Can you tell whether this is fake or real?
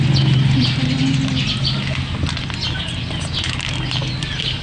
real